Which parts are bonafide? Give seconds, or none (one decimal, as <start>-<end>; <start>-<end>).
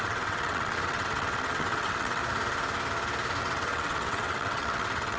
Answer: 2.2-3.4